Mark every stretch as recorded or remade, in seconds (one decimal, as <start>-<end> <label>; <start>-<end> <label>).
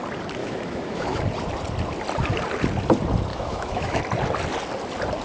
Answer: 0.0-0.4 recorded; 0.4-1.2 remade; 1.2-3.3 recorded; 3.3-4.0 remade; 4.0-5.2 recorded